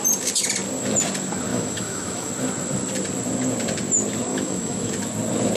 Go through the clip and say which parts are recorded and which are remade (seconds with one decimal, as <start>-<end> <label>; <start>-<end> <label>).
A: 0.0-1.5 recorded; 1.5-2.3 remade; 2.3-4.3 recorded; 4.3-4.9 remade; 4.9-5.6 recorded